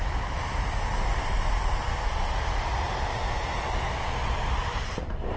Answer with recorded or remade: recorded